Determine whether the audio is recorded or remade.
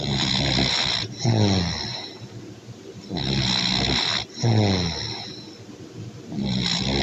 recorded